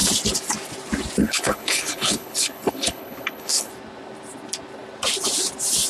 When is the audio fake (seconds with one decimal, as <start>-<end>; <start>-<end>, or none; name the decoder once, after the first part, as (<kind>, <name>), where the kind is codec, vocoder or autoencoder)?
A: 1.2-3.7 (codec, HILCodec)